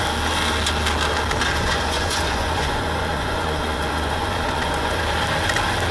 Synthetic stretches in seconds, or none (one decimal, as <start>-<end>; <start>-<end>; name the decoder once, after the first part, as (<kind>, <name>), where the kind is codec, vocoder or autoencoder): 1.5-5.0 (vocoder, Vocos)